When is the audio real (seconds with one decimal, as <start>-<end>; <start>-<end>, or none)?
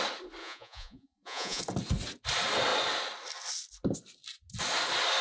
0.0-0.4; 1.6-5.2